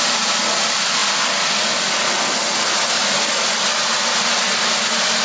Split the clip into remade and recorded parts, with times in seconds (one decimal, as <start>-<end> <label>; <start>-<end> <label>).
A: 0.0-5.2 recorded